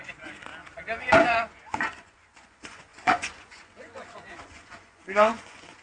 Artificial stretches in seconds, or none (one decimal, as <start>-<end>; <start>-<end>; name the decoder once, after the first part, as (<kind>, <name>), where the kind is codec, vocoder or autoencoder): 0.0-0.5 (vocoder, Vocos); 1.0-5.8